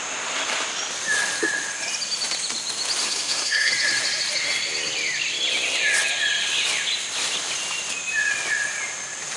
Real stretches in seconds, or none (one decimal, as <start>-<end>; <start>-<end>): 0.0-3.0; 3.7-9.4